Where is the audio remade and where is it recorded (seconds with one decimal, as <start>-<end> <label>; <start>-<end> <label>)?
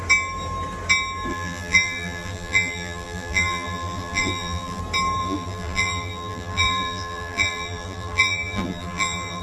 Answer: 0.0-1.3 recorded; 1.3-4.8 remade; 4.8-5.2 recorded; 5.2-9.4 remade